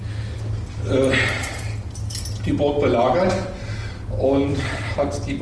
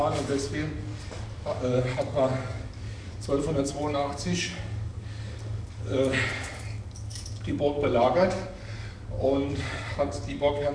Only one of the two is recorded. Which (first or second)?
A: first